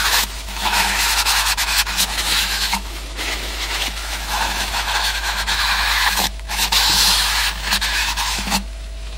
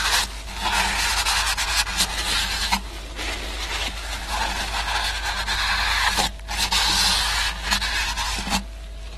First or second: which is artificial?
first